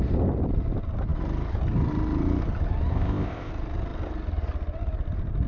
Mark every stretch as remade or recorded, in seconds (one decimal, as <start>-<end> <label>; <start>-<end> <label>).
0.0-2.9 recorded; 2.9-3.5 remade; 3.5-5.5 recorded